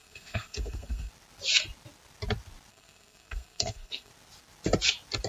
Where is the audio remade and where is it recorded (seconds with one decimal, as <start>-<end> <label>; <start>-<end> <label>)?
0.0-1.1 remade; 1.1-2.7 recorded; 2.7-4.1 remade; 4.1-5.3 recorded